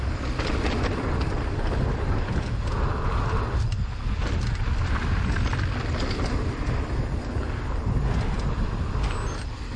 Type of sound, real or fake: real